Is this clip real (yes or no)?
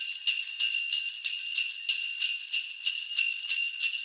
yes